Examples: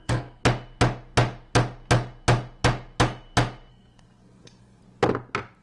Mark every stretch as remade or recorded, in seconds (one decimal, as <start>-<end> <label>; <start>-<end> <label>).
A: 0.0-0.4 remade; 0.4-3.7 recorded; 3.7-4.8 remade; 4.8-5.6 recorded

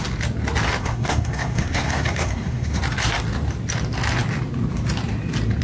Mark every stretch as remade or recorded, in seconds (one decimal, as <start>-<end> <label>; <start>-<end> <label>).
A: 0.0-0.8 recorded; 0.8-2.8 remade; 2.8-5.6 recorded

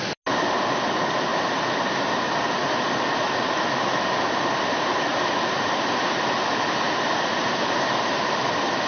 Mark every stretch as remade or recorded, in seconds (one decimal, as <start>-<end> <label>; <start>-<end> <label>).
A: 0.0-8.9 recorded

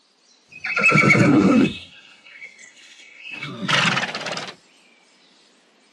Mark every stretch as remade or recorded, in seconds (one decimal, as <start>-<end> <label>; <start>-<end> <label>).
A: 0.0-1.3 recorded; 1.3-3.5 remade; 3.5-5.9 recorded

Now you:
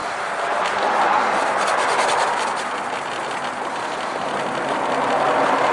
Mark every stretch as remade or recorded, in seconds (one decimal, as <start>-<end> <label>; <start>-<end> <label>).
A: 0.0-5.7 recorded